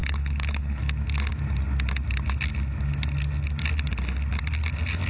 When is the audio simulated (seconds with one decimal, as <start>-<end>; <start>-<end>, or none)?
0.0-0.8